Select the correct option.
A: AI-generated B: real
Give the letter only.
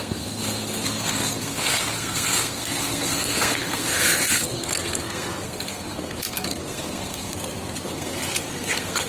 A